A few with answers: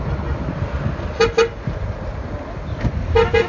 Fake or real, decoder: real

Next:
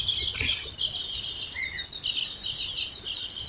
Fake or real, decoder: real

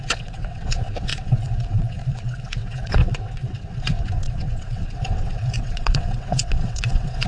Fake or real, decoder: fake, vocoder, WaveNeXt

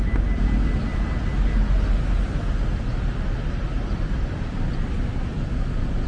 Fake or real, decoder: real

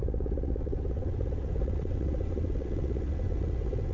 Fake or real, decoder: fake, vocoder, WaveNeXt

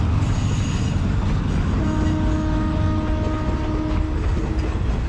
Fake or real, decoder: real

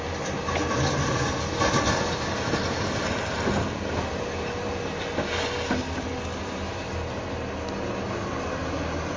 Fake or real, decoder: real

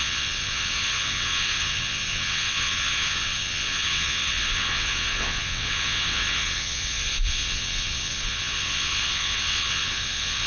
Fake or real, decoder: fake, vocoder, WaveNeXt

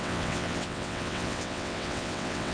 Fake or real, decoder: fake, vocoder, WaveNeXt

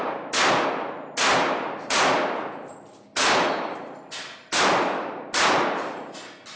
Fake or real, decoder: real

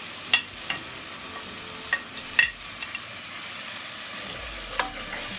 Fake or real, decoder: real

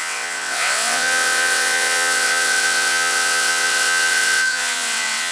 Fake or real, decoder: fake, vocoder, WaveNeXt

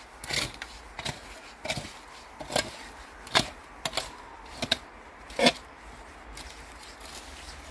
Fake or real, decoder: real